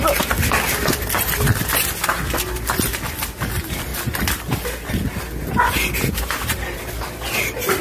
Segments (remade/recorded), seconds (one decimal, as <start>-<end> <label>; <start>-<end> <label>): 0.0-7.8 recorded